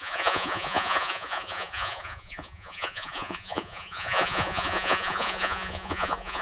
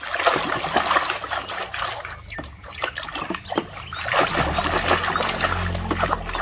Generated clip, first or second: first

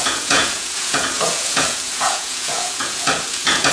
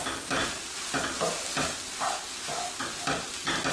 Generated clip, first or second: first